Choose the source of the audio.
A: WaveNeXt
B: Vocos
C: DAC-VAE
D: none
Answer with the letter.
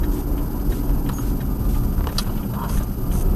D